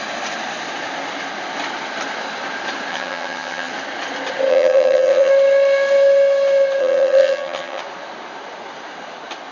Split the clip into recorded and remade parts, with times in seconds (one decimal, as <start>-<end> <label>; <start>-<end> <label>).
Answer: 0.0-2.9 recorded; 2.9-3.7 remade; 3.7-4.5 recorded; 4.5-5.3 remade; 5.3-6.8 recorded; 6.8-7.8 remade; 7.8-9.5 recorded